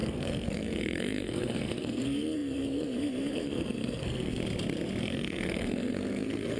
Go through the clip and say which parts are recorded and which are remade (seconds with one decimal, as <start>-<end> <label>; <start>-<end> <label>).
0.0-4.4 remade; 4.4-5.0 recorded; 5.0-6.6 remade